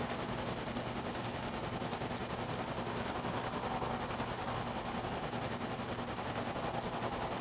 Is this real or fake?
real